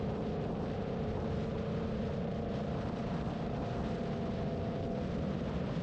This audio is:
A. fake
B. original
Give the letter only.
A